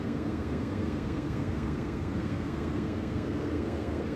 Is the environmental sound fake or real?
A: fake